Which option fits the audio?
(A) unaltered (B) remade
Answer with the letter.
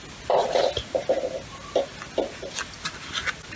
A